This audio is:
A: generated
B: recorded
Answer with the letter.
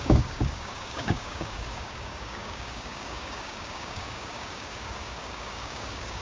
A